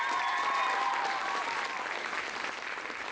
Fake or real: real